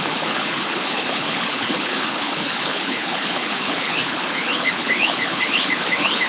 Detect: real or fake fake